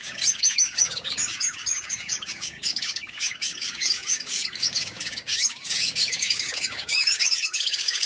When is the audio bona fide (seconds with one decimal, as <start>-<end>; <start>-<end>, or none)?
none